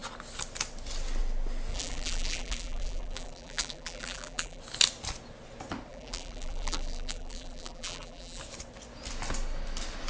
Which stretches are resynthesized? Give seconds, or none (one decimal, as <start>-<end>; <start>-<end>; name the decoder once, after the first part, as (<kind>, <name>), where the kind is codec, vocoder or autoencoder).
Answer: 1.7-4.6 (vocoder, BigVGAN v2); 5.9-8.4